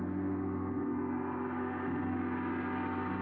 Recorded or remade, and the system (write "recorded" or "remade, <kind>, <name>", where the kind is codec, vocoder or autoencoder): recorded